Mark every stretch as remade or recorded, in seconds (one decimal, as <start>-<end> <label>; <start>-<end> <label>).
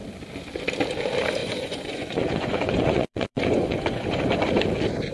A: 0.0-1.4 recorded; 1.4-4.5 remade; 4.5-5.1 recorded